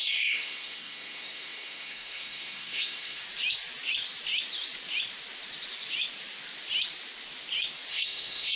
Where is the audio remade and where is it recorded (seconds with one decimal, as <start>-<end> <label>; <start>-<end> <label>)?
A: 0.0-3.2 remade; 3.2-7.9 recorded; 7.9-8.6 remade